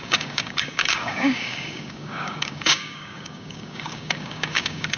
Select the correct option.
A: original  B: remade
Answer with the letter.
B